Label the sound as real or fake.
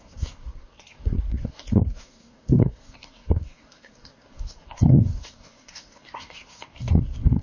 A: fake